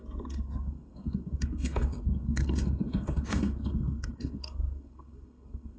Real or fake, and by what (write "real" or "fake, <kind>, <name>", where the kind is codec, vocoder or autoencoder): fake, codec, SNAC